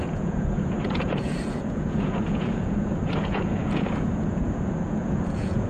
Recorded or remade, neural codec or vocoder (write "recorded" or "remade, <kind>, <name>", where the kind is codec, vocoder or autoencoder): remade, vocoder, Vocos